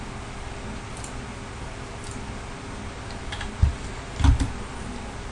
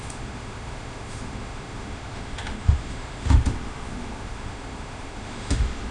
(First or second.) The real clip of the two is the first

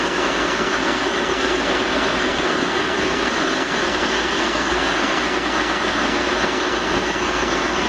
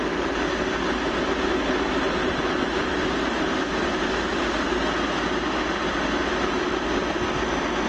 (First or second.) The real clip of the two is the second